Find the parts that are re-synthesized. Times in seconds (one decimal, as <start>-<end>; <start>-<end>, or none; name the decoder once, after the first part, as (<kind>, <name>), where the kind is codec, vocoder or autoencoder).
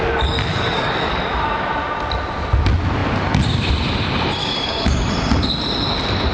0.5-1.2 (codec, DAC); 4.4-5.1